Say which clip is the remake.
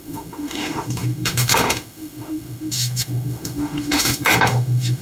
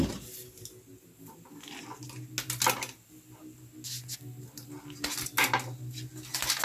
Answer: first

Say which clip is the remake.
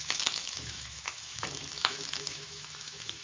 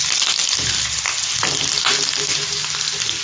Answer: first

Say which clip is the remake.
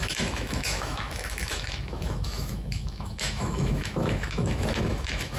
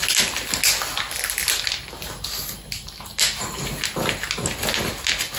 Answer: first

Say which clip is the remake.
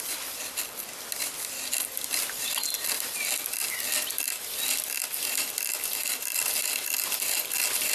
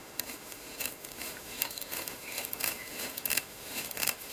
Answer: second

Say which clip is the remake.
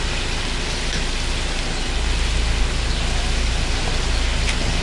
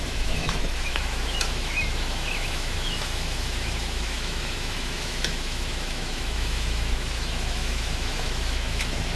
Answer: second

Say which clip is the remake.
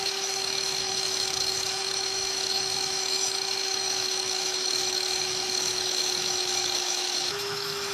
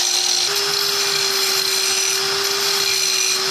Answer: first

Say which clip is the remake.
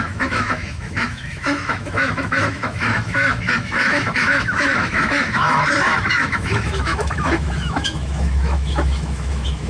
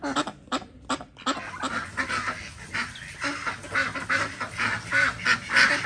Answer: first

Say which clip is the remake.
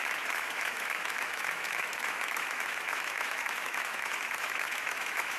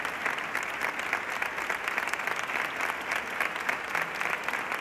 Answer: first